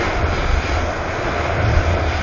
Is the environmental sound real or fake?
real